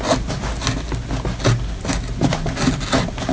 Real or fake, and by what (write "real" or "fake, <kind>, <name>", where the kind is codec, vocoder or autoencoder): real